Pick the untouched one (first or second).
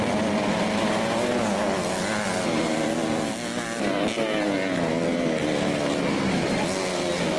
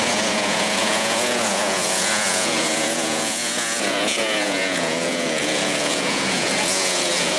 first